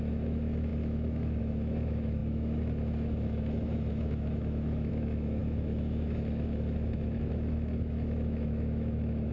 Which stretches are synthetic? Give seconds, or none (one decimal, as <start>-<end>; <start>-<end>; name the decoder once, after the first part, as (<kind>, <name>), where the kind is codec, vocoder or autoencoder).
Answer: 0.0-9.3 (autoencoder, DAC-VAE)